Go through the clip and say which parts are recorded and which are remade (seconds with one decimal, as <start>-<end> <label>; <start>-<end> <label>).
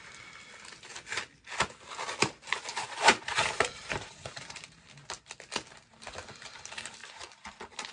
0.0-2.7 recorded; 2.7-4.8 remade; 4.8-7.9 recorded